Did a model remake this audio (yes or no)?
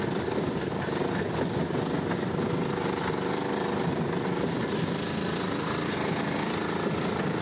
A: no